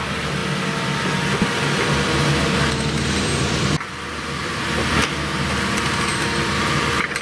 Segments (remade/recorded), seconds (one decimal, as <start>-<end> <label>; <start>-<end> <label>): 0.0-0.4 remade; 0.4-3.1 recorded; 3.1-7.2 remade